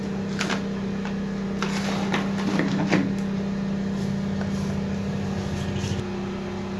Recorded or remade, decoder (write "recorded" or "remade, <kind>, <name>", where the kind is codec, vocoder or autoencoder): recorded